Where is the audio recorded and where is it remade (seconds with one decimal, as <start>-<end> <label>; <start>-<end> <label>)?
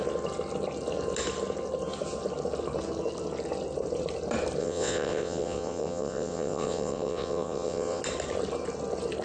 0.0-4.6 recorded; 4.6-8.0 remade; 8.0-9.2 recorded